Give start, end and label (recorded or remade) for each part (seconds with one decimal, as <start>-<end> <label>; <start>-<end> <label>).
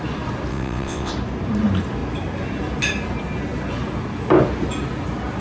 0.0-0.5 recorded; 0.5-1.1 remade; 1.1-5.4 recorded